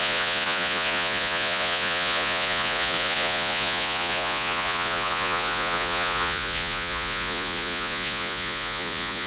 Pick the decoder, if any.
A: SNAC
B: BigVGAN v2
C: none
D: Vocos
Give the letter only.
D